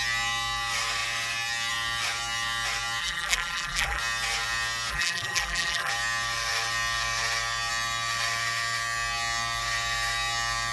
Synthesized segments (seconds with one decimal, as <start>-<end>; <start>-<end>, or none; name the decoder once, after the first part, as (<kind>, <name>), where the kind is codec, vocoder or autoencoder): 3.0-4.0 (vocoder, BigVGAN v2); 4.9-5.9